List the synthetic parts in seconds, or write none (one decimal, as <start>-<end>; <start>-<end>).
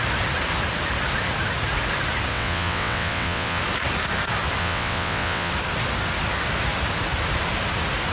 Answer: 2.3-3.6; 4.6-5.5